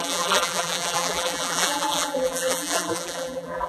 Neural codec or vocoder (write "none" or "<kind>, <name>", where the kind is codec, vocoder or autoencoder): vocoder, BigVGAN v2